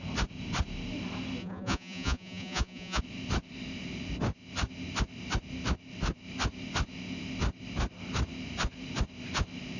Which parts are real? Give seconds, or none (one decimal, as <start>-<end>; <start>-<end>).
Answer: 0.0-1.4; 3.0-9.8